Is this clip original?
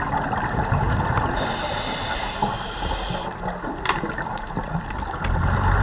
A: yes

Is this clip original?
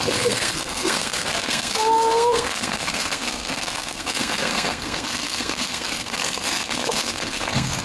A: no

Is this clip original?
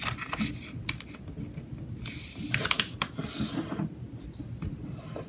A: yes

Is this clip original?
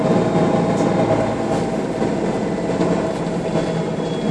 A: yes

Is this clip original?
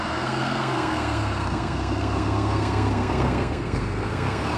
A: no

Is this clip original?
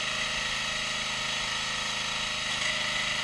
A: yes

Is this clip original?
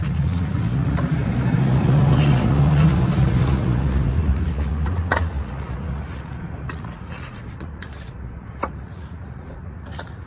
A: no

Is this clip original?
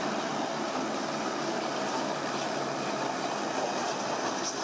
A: yes